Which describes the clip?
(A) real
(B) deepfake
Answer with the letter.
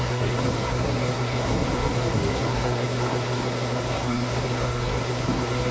B